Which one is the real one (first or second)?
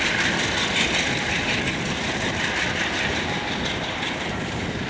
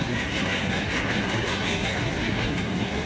first